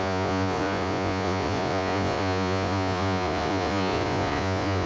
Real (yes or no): no